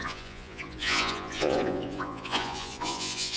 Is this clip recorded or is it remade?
remade